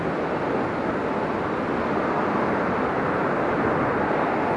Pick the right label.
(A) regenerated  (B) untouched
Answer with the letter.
B